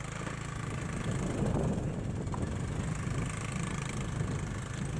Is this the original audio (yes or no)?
yes